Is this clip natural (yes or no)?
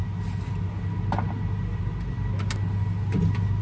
yes